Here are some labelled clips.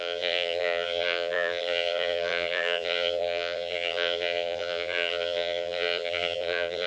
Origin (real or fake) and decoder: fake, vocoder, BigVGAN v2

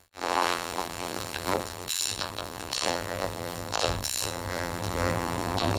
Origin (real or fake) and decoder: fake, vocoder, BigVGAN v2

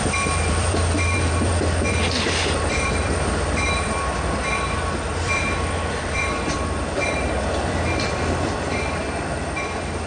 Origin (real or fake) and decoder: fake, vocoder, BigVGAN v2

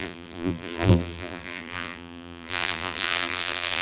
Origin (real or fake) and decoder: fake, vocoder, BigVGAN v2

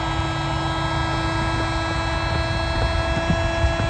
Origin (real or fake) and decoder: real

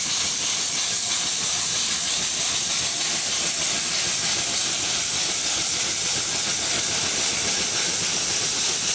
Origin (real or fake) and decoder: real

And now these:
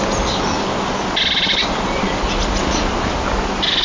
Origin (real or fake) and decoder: real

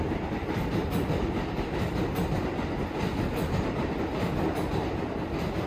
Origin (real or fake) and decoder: fake, vocoder, BigVGAN v2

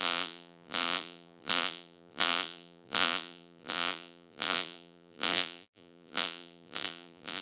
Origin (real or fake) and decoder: fake, vocoder, BigVGAN v2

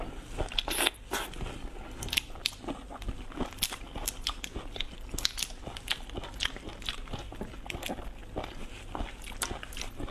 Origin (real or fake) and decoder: real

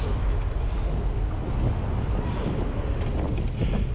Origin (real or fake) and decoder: real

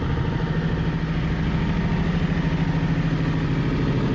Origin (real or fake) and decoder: real